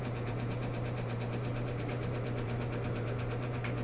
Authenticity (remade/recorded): remade